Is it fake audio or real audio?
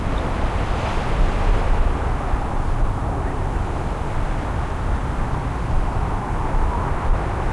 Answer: real